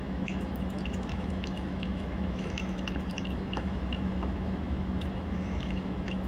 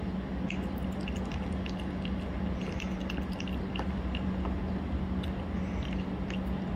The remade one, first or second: first